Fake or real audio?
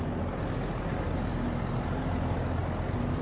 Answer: real